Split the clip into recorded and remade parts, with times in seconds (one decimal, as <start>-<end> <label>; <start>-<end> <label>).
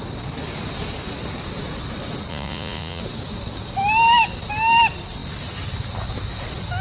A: 0.0-2.3 recorded; 2.3-3.0 remade; 3.0-6.8 recorded